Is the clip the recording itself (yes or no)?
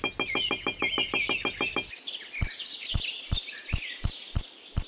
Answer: yes